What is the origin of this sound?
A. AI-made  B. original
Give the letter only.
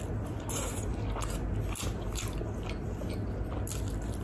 B